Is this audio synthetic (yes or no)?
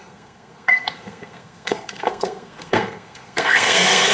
yes